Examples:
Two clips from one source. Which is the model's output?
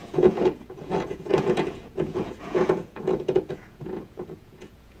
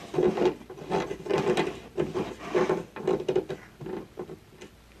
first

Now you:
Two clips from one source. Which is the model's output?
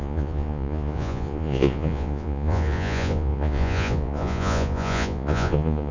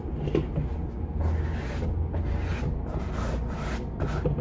first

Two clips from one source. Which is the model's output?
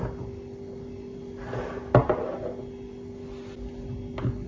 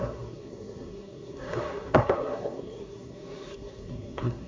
second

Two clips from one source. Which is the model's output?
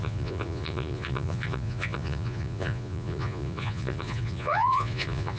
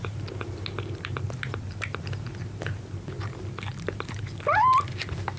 first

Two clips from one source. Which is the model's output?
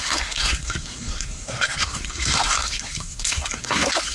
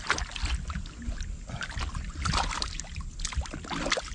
first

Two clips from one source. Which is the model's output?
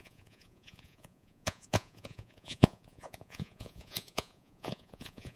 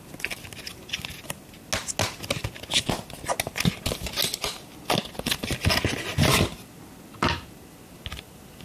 first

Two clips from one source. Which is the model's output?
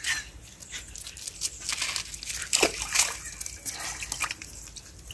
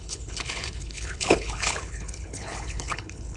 second